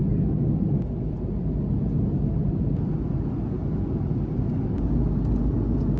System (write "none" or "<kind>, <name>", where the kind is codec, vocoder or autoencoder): none